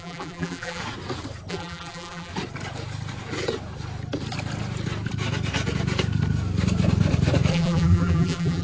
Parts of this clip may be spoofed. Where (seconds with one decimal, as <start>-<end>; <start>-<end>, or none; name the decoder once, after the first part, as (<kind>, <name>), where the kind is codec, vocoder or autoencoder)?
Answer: 0.0-0.8 (vocoder, BigVGAN v2); 1.5-2.3; 7.5-8.6

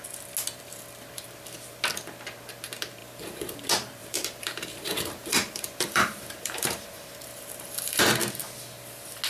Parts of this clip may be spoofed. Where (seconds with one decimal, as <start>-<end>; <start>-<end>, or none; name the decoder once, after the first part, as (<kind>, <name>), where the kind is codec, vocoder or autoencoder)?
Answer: 3.0-3.5 (vocoder, BigVGAN v2); 4.0-8.0

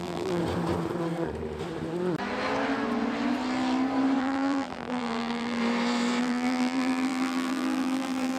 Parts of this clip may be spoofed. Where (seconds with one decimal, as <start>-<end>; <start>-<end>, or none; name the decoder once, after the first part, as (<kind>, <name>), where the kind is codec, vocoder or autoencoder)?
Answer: 0.0-0.4 (vocoder, BigVGAN v2); 4.2-5.6; 6.2-8.4